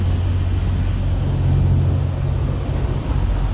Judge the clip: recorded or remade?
recorded